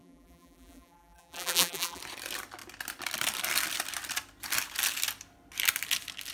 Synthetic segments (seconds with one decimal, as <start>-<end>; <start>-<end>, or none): 0.0-2.0

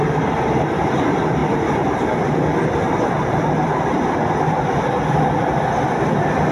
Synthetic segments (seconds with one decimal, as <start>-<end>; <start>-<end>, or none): 0.0-5.7

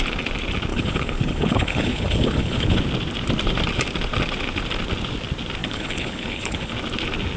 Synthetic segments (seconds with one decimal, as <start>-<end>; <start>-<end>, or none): 0.7-2.8; 5.6-6.7

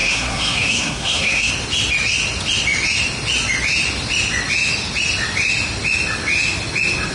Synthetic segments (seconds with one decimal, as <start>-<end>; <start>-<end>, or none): 0.0-1.5